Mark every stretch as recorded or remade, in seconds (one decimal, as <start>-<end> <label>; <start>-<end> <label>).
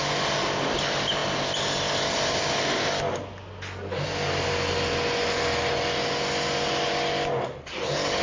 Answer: 0.0-8.2 recorded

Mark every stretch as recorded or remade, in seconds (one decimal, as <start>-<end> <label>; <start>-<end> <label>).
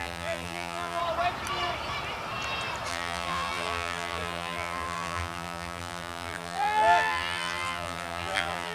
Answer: 0.0-1.0 remade; 1.0-2.9 recorded; 2.9-8.7 remade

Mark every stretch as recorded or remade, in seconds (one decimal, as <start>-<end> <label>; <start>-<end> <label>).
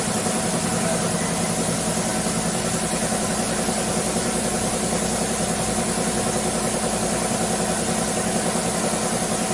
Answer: 0.0-9.5 recorded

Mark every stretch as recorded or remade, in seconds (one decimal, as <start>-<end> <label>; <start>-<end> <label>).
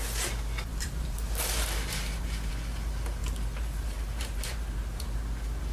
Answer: 0.0-0.7 recorded; 0.7-2.5 remade; 2.5-3.2 recorded; 3.2-5.2 remade; 5.2-5.7 recorded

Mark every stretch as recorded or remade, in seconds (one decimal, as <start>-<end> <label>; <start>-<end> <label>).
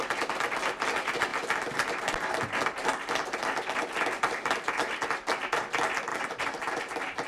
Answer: 0.0-6.1 recorded; 6.1-6.8 remade; 6.8-7.3 recorded